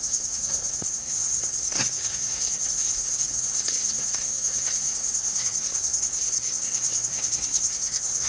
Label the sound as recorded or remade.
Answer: remade